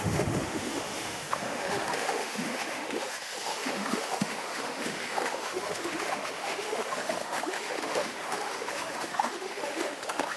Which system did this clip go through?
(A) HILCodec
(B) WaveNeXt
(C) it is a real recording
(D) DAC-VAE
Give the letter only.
D